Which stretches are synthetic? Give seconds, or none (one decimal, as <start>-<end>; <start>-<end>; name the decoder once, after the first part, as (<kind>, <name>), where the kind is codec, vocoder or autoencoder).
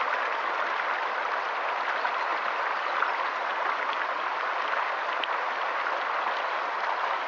none